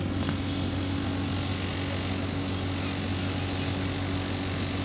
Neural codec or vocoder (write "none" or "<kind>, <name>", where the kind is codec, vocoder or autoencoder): none